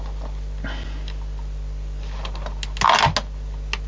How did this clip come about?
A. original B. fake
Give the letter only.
A